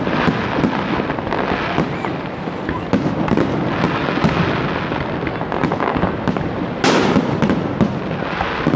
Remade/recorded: recorded